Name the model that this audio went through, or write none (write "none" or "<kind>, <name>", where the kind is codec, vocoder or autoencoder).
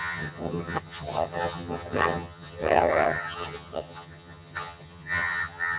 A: vocoder, HiFi-GAN